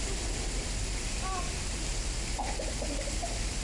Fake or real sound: real